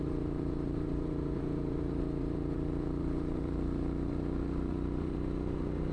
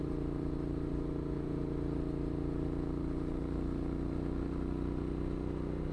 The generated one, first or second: first